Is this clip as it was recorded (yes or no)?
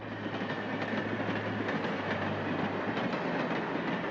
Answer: yes